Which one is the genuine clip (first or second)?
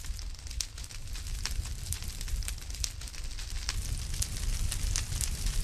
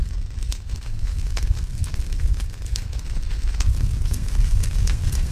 first